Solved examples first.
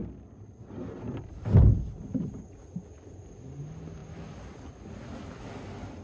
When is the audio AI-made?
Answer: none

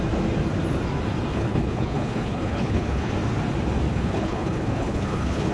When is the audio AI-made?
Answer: 1.3-3.1 (codec, HILCodec); 3.9-5.5

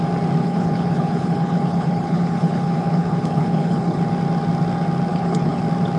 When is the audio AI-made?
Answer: 0.4-4.0 (codec, HILCodec); 5.1-5.6

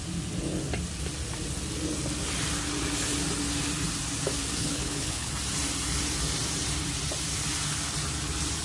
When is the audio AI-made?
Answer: 4.6-5.3 (codec, HILCodec)

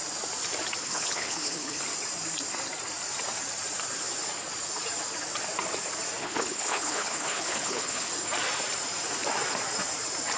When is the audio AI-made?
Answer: 0.8-1.8 (codec, HILCodec); 6.2-8.1

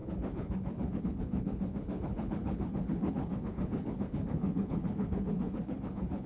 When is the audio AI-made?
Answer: 0.0-6.3 (codec, HILCodec)

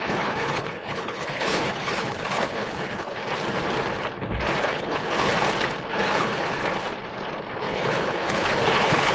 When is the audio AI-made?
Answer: 0.0-3.2 (codec, HILCodec); 4.6-5.3; 5.9-6.6; 7.6-9.1